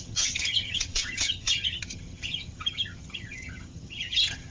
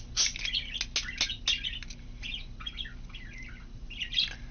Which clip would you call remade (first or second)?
first